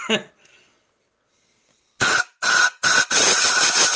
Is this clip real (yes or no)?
yes